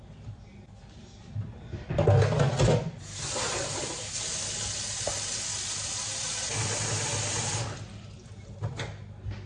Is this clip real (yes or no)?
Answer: yes